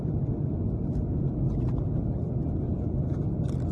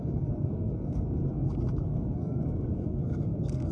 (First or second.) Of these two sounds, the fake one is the second